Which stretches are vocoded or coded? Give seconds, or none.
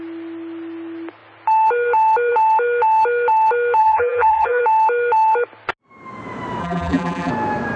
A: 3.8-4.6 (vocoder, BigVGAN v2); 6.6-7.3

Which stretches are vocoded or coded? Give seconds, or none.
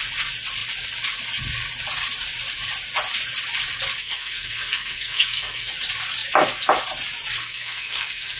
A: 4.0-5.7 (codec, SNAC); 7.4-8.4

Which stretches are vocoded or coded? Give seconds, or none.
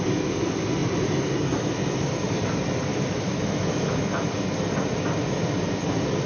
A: 2.9-3.9 (autoencoder, DAC-VAE)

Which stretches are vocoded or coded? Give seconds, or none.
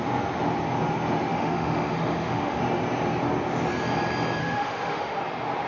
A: 1.3-2.6 (autoencoder, DAC-VAE); 4.4-5.2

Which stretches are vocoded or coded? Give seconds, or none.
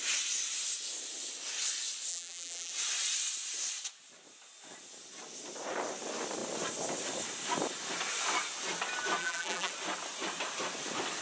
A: 2.1-2.7 (vocoder, BigVGAN v2); 9.2-9.7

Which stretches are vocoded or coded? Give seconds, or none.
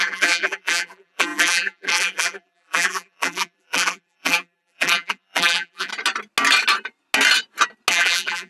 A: 0.0-5.9 (vocoder, BigVGAN v2); 7.9-8.5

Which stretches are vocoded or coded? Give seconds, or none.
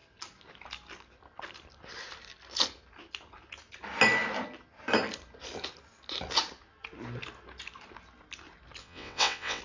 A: 8.8-9.6 (vocoder, WaveNeXt)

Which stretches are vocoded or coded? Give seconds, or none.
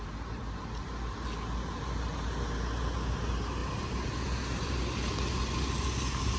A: 3.6-4.7 (vocoder, BigVGAN v2)